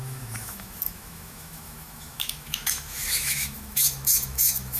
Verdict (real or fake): fake